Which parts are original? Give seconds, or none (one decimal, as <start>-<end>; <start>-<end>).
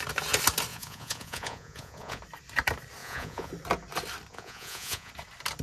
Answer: 0.0-0.7; 2.2-3.0; 3.5-4.3; 5.1-5.6